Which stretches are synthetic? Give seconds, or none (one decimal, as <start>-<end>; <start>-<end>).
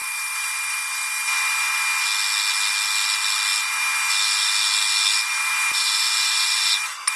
none